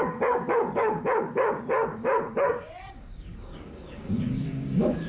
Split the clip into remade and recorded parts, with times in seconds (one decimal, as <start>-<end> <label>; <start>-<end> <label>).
0.0-5.1 remade